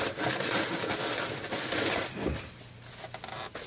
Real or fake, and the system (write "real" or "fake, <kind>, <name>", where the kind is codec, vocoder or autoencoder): real